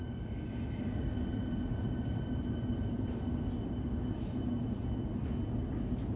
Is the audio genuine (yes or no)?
yes